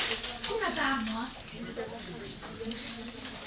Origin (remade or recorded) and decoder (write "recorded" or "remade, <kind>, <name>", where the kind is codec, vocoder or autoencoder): recorded